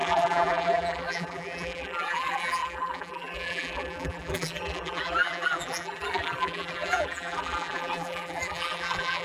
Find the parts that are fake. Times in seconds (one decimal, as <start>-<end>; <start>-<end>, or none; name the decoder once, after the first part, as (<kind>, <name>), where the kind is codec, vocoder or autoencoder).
0.0-9.2 (vocoder, BigVGAN v2)